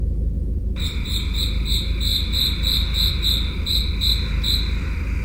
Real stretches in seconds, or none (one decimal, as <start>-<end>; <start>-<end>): 0.0-2.1; 3.1-5.2